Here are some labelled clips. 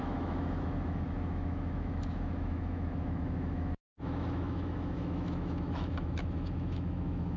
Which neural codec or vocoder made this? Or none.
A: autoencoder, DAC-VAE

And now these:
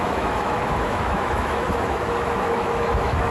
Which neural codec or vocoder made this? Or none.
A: autoencoder, DAC-VAE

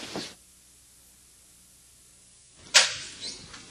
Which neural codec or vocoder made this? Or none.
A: none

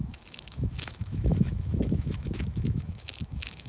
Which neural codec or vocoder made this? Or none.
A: autoencoder, DAC-VAE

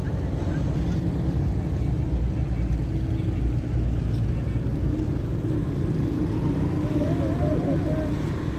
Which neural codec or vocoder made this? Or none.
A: none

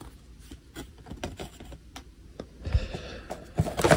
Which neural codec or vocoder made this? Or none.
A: none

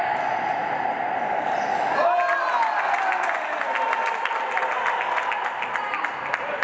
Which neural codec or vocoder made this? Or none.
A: none